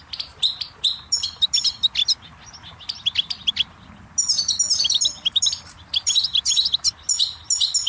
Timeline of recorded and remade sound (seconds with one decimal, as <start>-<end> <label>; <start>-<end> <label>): 0.0-7.9 recorded